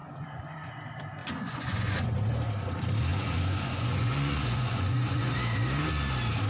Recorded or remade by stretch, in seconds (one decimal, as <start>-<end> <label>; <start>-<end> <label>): 0.0-0.7 remade; 0.7-1.2 recorded; 1.2-2.1 remade; 2.1-3.1 recorded; 3.1-5.3 remade; 5.3-6.5 recorded